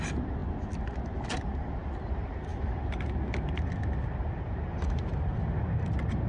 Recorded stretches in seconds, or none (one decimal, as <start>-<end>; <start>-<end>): 0.0-6.3